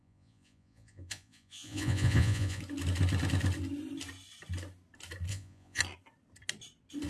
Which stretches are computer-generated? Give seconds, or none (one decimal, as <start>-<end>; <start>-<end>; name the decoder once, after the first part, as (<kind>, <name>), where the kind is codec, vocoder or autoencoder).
0.0-2.6 (vocoder, Vocos); 5.3-5.8